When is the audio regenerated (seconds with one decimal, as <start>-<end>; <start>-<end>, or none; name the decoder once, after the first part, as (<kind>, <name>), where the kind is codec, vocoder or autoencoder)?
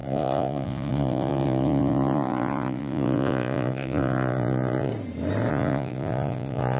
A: 0.0-4.9 (vocoder, Vocos); 5.5-6.8